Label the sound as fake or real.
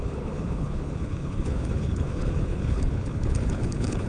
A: fake